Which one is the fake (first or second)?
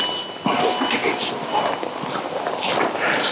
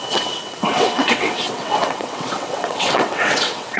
second